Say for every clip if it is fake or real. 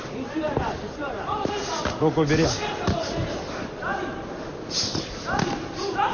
real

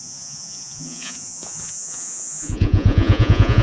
fake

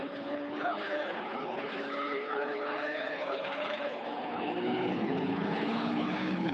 fake